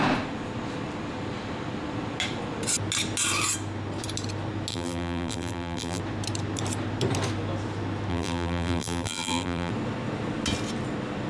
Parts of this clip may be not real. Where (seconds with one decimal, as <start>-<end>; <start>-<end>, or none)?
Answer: 4.7-6.0; 8.1-9.7